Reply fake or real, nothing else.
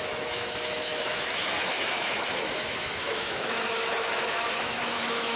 fake